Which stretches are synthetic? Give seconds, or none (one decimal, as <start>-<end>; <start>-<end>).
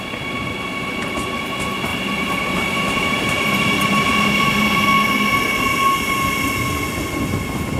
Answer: 1.9-5.6